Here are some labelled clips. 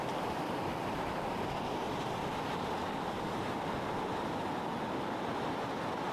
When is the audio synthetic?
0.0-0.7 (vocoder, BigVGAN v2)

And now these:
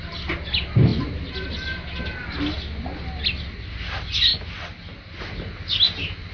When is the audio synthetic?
none

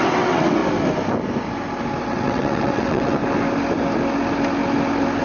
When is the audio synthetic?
0.0-0.6 (vocoder, WaveNeXt); 2.0-3.2